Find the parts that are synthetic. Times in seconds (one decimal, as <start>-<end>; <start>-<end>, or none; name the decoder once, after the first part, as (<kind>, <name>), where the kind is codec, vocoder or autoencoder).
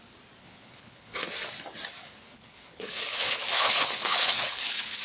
0.4-1.3 (codec, HILCodec); 2.0-5.0